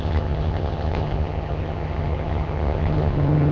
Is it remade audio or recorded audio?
remade